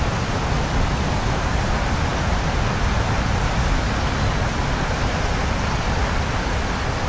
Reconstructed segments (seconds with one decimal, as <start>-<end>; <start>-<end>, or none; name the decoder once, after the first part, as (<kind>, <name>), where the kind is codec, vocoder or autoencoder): none